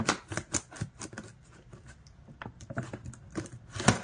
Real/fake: real